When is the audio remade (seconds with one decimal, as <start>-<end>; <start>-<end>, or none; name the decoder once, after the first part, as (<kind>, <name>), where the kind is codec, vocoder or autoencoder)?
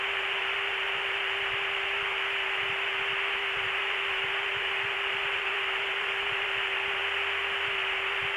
0.0-7.0 (vocoder, BigVGAN v2); 7.7-8.4